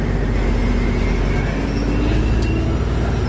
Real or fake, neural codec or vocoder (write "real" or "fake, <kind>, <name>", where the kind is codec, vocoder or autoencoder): real